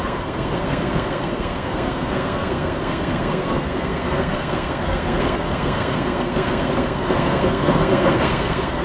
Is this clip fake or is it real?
fake